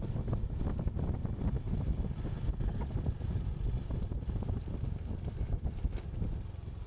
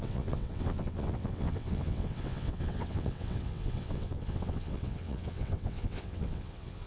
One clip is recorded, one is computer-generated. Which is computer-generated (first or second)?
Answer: second